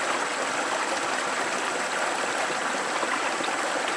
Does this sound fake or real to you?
real